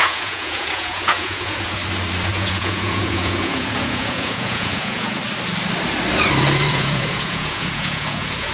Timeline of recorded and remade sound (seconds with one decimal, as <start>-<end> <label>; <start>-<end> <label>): 0.0-1.8 remade; 1.8-2.3 recorded; 2.3-5.2 remade; 5.2-6.7 recorded; 6.7-8.5 remade